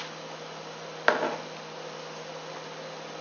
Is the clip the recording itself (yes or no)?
yes